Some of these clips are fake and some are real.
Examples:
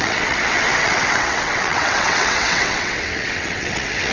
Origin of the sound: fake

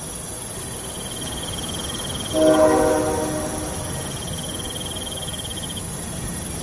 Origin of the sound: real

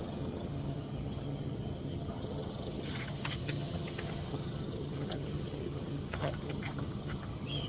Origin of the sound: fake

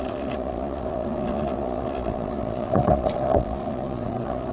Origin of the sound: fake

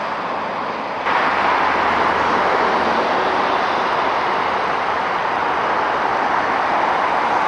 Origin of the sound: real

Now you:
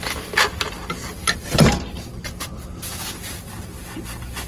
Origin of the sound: real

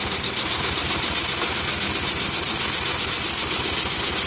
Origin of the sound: real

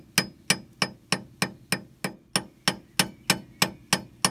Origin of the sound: real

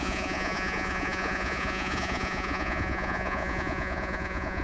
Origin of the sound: fake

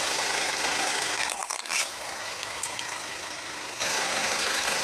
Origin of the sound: fake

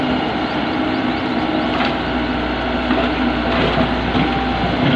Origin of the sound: real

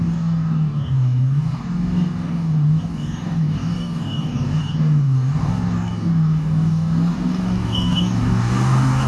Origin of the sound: fake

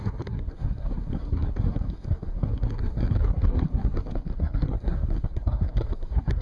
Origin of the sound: fake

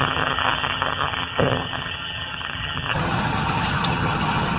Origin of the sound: fake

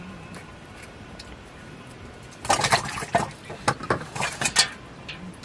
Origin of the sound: real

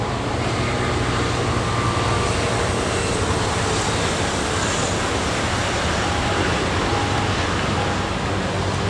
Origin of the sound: real